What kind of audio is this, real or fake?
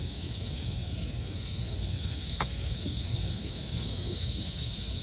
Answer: fake